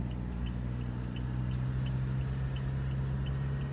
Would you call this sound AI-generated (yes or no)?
no